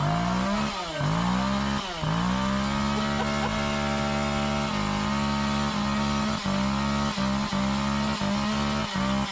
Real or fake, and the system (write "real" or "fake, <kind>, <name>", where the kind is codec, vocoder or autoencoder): real